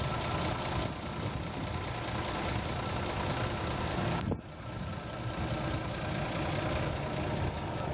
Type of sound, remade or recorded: recorded